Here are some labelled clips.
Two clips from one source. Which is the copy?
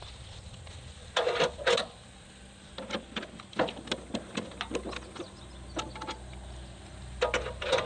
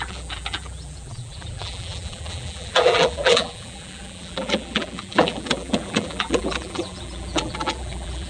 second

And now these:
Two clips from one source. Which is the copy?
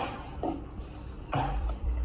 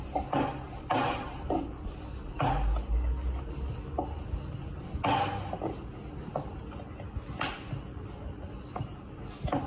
first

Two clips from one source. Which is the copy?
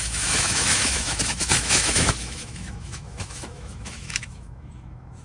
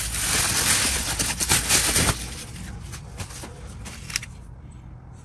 first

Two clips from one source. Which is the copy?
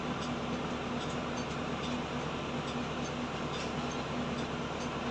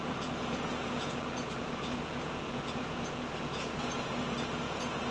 second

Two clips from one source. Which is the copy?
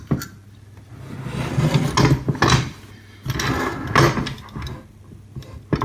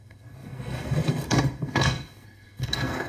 second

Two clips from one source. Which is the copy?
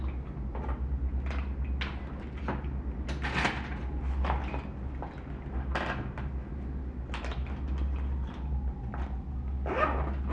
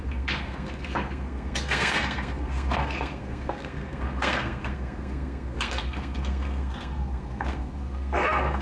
second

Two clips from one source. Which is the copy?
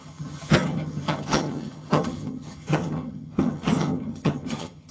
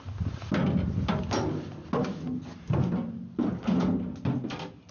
first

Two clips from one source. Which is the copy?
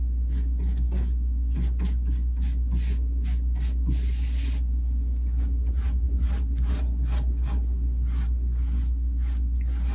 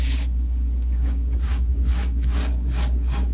second